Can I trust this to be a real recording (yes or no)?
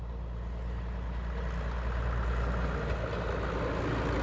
yes